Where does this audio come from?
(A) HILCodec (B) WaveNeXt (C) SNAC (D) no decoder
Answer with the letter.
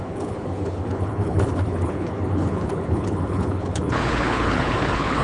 A